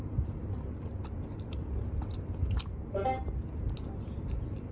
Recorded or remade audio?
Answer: recorded